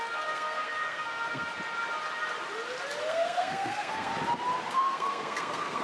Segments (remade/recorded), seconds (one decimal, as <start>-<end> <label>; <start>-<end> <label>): 0.0-1.5 remade; 1.5-3.1 recorded; 3.1-4.1 remade; 4.1-4.7 recorded; 4.7-5.8 remade